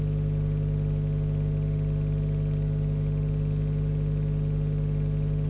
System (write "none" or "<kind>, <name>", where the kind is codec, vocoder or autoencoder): none